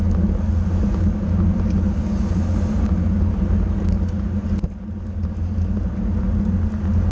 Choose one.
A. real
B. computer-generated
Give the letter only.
A